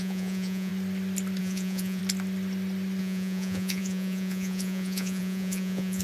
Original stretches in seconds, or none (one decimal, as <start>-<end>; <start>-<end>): 0.7-1.4; 2.0-3.0